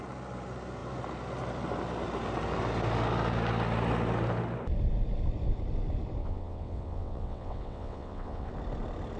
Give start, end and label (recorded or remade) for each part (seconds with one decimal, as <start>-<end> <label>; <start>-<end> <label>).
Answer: 0.0-6.2 recorded; 6.2-8.5 remade; 8.5-9.2 recorded